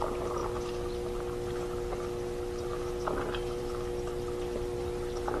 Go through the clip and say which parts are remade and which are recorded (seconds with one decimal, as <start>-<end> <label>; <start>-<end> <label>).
0.0-5.4 recorded